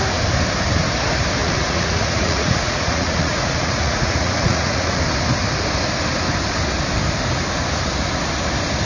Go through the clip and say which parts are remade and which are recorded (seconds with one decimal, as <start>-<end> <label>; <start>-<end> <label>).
0.0-1.4 recorded; 1.4-5.0 remade; 5.0-8.9 recorded